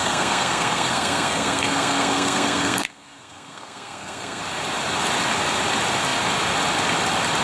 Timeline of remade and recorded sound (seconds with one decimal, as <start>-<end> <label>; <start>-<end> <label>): 0.0-4.4 remade; 4.4-7.4 recorded